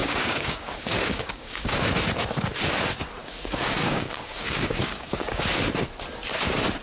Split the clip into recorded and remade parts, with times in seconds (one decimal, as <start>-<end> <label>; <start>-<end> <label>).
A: 0.0-1.8 remade; 1.8-3.2 recorded; 3.2-5.4 remade; 5.4-6.8 recorded

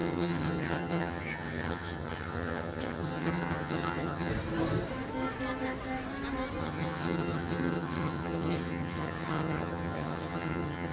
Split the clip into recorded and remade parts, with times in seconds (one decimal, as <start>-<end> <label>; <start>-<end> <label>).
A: 0.0-4.3 remade; 4.3-6.6 recorded; 6.6-10.9 remade

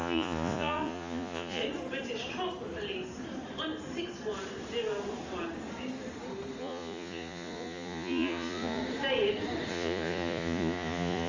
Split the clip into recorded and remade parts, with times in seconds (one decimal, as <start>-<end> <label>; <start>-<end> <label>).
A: 0.0-1.6 remade; 1.6-6.6 recorded; 6.6-8.8 remade; 8.8-9.7 recorded; 9.7-11.3 remade

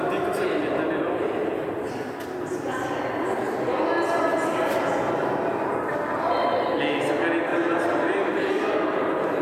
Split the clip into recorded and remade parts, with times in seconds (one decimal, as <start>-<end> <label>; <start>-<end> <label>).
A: 0.0-7.5 recorded; 7.5-8.5 remade; 8.5-9.4 recorded

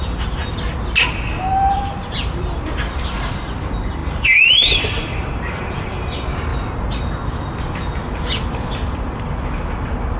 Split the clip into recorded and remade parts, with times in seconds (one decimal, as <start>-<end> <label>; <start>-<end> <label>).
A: 0.0-0.4 remade; 0.4-1.7 recorded; 1.7-6.5 remade; 6.5-7.7 recorded; 7.7-10.2 remade